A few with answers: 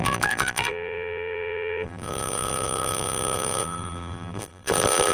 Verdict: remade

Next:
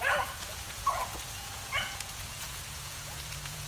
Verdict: remade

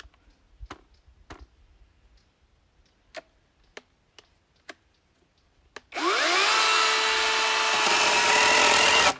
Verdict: recorded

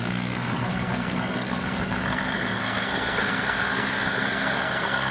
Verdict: remade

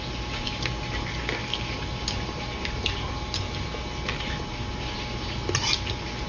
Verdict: recorded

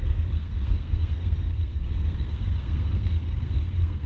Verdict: remade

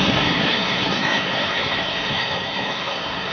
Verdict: remade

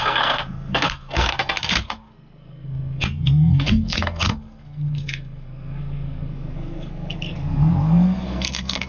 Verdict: remade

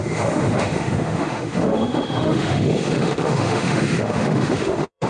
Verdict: remade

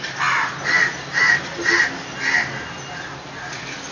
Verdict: recorded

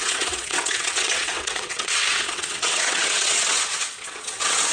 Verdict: remade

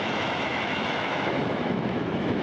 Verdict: remade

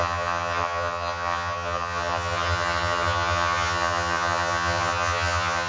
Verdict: remade